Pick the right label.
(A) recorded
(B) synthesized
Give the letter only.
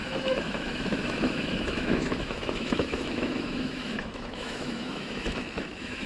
B